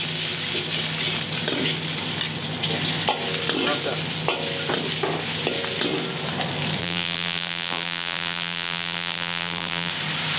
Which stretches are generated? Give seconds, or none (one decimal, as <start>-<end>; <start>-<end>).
6.8-9.9